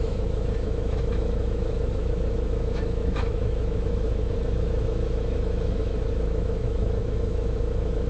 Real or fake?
fake